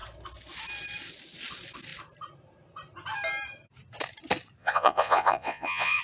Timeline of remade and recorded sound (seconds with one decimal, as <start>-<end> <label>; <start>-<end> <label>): 0.0-4.6 recorded; 4.6-6.0 remade